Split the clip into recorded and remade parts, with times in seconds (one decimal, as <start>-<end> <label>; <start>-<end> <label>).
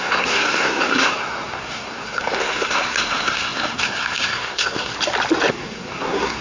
0.0-4.9 remade; 4.9-5.5 recorded; 5.5-6.4 remade